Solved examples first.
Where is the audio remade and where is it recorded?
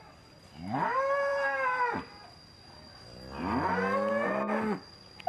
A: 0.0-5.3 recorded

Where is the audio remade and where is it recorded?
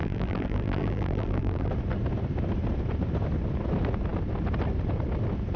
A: 0.0-1.7 remade; 1.7-5.6 recorded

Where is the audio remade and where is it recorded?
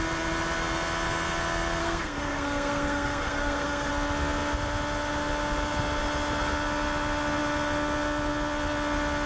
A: 0.0-1.8 recorded; 1.8-3.9 remade; 3.9-9.3 recorded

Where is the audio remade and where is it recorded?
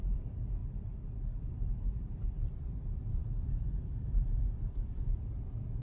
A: 0.0-0.6 remade; 0.6-1.5 recorded; 1.5-3.2 remade; 3.2-3.7 recorded; 3.7-5.8 remade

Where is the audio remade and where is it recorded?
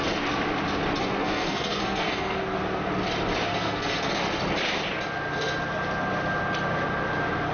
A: 0.0-1.0 recorded; 1.0-2.4 remade; 2.4-3.5 recorded; 3.5-4.1 remade; 4.1-7.5 recorded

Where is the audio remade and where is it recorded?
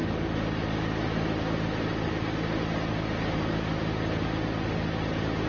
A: 0.0-5.5 recorded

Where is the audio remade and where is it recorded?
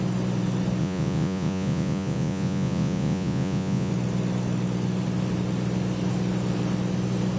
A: 0.0-0.8 recorded; 0.8-3.9 remade; 3.9-7.4 recorded